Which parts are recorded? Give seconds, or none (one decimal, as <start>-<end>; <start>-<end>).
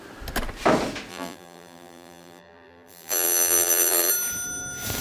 0.0-1.1; 4.1-5.0